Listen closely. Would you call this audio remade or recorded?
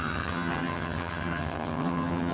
remade